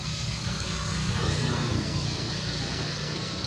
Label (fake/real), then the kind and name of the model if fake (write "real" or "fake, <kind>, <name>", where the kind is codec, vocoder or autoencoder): fake, codec, SNAC